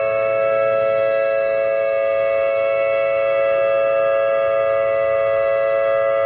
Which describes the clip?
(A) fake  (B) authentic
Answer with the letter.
A